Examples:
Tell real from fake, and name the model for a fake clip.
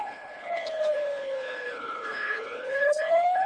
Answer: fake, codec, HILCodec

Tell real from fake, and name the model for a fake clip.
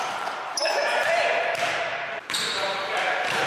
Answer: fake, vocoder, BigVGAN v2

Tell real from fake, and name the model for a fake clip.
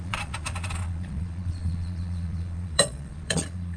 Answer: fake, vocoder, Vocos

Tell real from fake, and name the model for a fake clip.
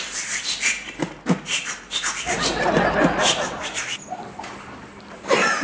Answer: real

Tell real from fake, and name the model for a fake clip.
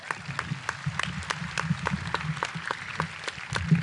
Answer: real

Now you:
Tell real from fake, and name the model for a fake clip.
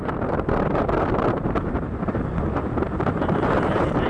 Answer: fake, vocoder, BigVGAN v2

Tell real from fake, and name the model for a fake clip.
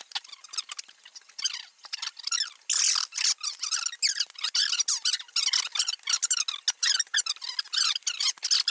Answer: real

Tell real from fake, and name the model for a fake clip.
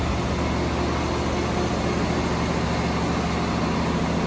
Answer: real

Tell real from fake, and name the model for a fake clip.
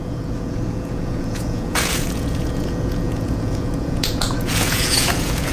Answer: fake, vocoder, Vocos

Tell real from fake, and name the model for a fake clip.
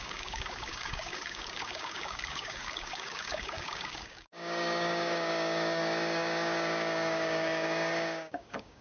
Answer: fake, codec, DAC